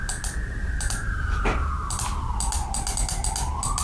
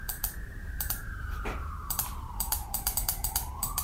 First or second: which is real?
first